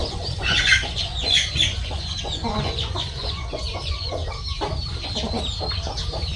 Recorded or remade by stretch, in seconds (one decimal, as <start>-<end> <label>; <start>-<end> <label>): 0.0-4.2 remade; 4.2-6.4 recorded